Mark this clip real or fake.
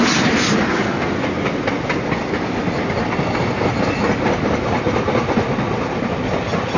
real